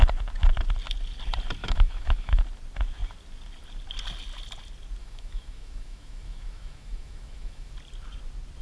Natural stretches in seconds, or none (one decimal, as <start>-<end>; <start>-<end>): 0.0-1.6; 2.4-5.0; 7.7-8.6